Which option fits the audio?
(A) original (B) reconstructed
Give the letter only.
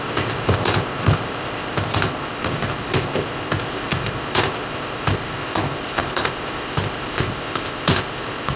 B